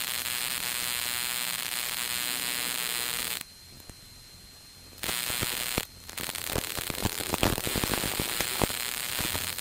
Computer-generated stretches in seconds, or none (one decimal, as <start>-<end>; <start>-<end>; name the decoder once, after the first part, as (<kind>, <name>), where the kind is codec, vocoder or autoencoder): 7.0-9.1 (vocoder, BigVGAN v2)